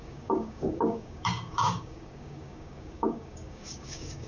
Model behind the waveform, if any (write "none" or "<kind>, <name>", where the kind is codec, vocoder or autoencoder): codec, DAC